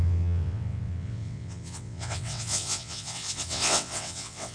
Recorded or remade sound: remade